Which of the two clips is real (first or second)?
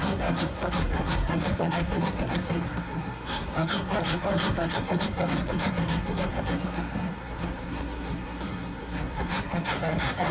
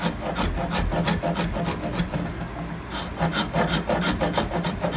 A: second